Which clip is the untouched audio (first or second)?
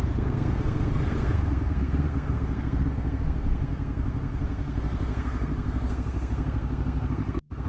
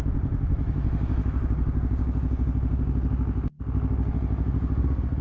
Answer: second